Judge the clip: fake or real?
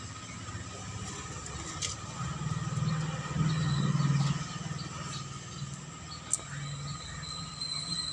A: real